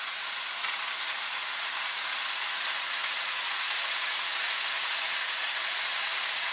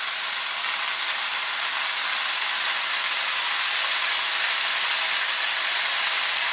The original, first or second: second